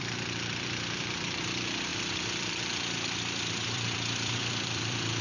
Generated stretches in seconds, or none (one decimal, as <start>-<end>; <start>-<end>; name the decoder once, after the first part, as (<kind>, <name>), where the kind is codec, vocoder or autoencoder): 0.0-5.2 (vocoder, BigVGAN v2)